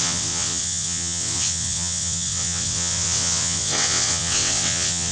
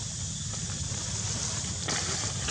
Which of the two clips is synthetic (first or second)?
first